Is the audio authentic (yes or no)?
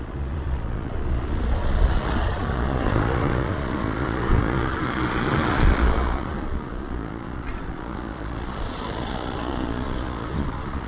no